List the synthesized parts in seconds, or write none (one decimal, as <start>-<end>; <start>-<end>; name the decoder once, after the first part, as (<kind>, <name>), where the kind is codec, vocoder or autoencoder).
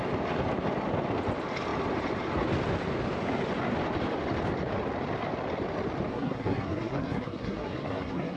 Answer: 6.1-8.4 (codec, SNAC)